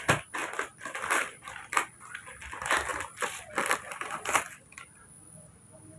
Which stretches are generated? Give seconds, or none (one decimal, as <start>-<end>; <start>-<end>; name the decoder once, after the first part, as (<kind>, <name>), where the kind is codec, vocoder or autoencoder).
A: none